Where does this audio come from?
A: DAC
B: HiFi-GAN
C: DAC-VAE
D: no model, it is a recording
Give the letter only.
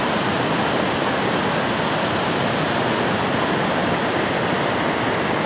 D